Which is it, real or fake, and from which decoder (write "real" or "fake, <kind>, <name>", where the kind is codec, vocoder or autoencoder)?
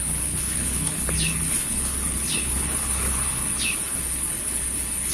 fake, codec, HILCodec